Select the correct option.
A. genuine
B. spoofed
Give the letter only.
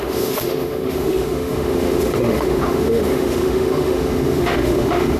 B